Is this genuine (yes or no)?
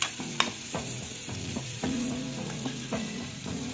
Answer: no